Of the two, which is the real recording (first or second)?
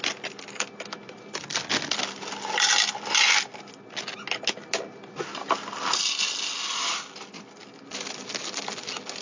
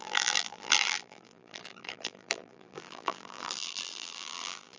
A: first